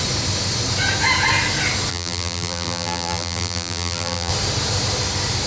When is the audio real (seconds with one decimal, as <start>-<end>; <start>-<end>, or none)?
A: 0.0-1.9; 4.3-5.5